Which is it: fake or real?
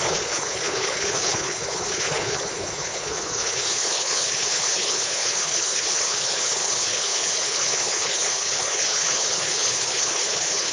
fake